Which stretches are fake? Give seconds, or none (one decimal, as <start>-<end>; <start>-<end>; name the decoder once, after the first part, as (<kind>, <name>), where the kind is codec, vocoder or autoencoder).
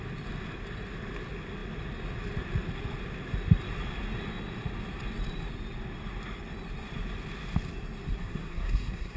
8.2-9.2 (codec, SNAC)